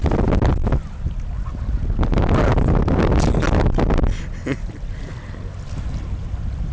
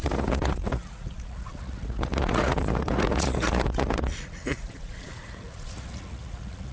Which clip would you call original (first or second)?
first